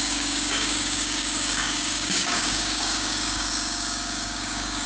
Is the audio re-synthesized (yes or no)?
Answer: yes